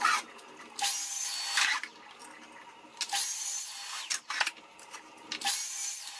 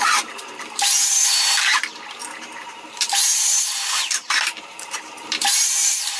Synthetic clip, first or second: second